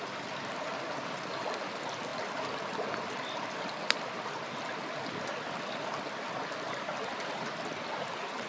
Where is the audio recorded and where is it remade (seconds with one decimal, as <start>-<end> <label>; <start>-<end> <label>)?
0.0-8.5 recorded

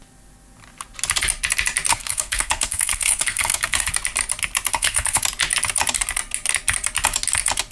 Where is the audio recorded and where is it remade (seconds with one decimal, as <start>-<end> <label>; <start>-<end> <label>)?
0.0-1.9 recorded; 1.9-3.9 remade; 3.9-4.7 recorded; 4.7-5.2 remade; 5.2-7.7 recorded

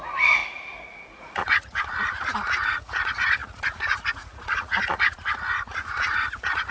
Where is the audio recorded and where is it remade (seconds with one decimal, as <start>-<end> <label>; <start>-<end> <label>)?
0.0-6.7 remade